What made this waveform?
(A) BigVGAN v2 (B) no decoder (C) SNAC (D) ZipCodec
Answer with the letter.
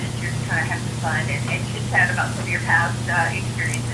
B